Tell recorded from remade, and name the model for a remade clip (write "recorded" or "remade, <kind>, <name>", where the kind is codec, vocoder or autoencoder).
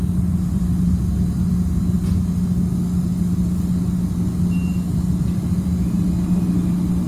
recorded